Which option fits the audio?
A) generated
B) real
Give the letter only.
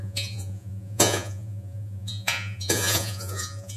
A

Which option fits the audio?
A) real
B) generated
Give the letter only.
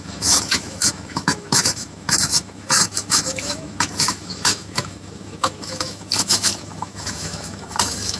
B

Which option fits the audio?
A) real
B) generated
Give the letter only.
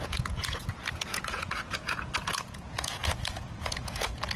B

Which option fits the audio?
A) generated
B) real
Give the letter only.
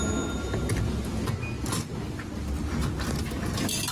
B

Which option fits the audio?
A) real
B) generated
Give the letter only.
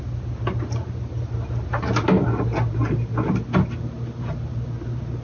A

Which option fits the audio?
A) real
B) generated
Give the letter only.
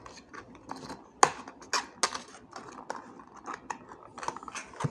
A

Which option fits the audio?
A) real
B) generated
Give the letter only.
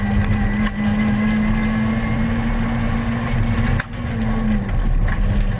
A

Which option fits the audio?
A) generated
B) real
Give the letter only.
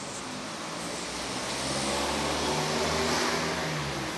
B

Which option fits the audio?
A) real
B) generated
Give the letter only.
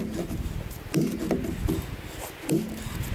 A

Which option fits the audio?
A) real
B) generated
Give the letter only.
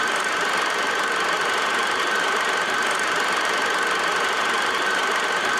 B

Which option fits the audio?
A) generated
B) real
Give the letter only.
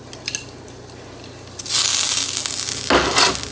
B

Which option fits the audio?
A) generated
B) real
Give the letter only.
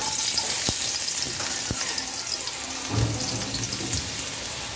B